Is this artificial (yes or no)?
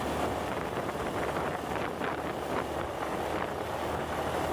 no